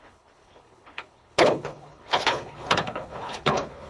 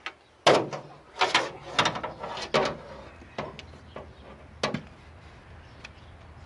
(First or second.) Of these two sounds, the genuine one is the second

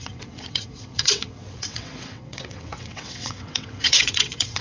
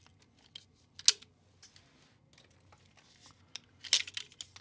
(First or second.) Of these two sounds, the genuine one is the second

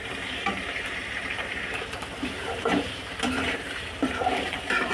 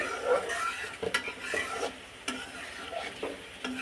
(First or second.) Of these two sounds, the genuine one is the second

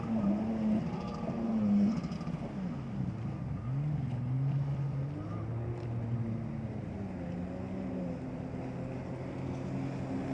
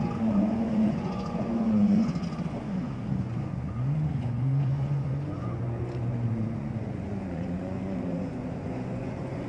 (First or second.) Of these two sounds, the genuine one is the first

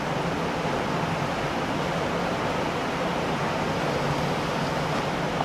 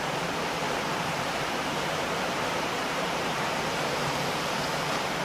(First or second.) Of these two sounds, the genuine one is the first